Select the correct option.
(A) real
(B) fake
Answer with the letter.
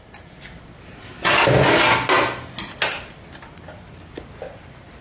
A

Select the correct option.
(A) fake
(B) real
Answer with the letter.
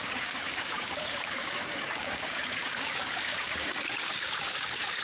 A